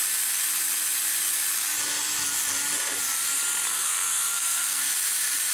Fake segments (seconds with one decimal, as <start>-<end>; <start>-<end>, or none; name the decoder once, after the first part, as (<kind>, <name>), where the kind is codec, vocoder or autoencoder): 3.7-4.8 (codec, SNAC)